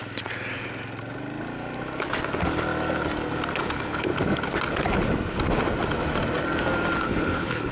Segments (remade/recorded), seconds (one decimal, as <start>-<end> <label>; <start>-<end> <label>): 0.0-3.6 recorded; 3.6-4.1 remade; 4.1-7.0 recorded; 7.0-7.7 remade